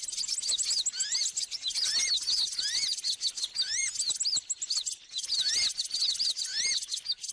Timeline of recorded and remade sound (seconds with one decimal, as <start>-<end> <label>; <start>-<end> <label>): 0.0-7.3 recorded